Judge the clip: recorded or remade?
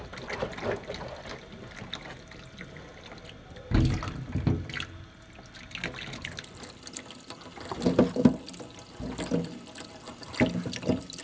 recorded